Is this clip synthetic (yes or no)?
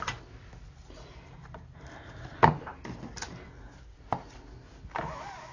no